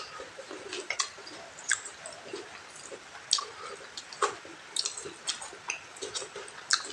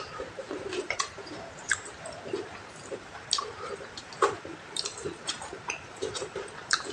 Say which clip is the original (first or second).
first